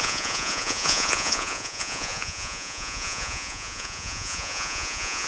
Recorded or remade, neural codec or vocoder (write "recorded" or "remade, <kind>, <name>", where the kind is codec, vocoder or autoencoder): remade, vocoder, Vocos